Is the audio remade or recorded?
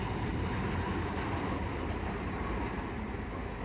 recorded